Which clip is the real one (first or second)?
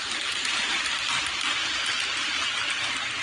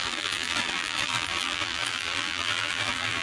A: first